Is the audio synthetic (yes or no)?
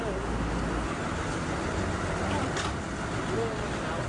no